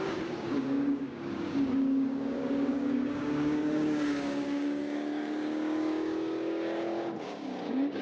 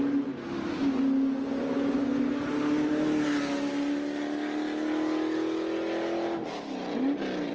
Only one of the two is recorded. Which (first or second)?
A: second